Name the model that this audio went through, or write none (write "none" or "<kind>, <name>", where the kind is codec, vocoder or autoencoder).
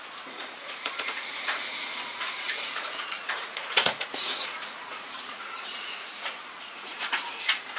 vocoder, Vocos